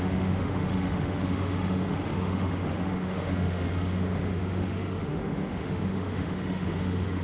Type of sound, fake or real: fake